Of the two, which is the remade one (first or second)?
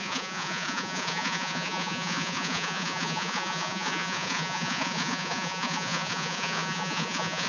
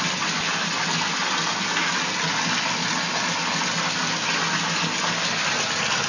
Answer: first